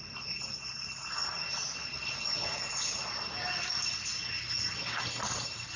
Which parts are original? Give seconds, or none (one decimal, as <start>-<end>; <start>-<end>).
0.0-5.8